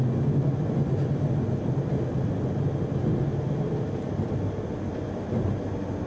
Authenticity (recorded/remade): recorded